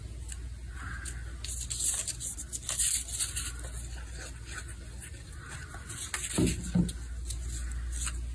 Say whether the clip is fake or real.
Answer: real